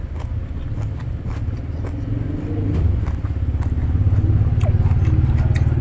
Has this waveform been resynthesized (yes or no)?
no